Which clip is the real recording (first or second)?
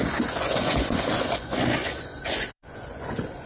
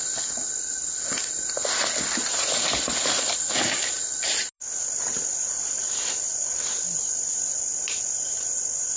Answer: second